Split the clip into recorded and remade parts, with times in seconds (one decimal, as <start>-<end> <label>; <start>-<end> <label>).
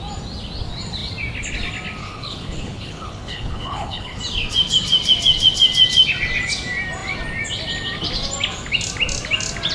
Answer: 0.0-2.0 recorded; 2.0-4.2 remade; 4.2-9.7 recorded